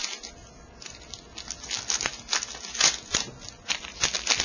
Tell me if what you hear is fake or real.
real